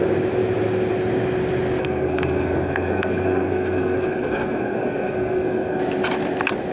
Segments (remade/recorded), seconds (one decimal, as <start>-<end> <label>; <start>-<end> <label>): 0.0-1.8 recorded; 1.8-5.8 remade; 5.8-6.7 recorded